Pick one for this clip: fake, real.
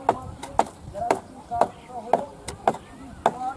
real